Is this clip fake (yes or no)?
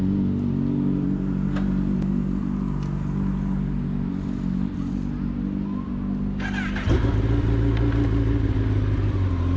no